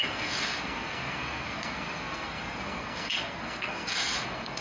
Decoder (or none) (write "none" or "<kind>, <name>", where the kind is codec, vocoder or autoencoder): codec, SNAC